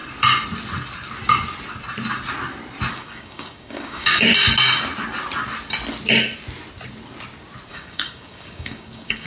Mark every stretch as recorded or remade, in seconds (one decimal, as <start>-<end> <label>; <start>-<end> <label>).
0.0-2.9 recorded; 2.9-4.3 remade; 4.3-7.7 recorded; 7.7-9.3 remade